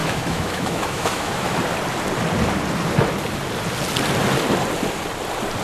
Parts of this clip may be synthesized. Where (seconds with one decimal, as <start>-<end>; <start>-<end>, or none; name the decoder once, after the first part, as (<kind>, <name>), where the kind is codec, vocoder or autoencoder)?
0.0-1.6 (autoencoder, DAC-VAE)